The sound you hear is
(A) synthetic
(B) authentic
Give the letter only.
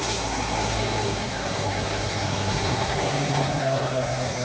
A